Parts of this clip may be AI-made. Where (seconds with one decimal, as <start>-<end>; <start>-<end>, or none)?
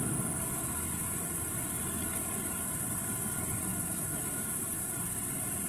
3.7-4.7